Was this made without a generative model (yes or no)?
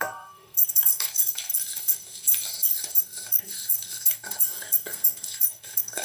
no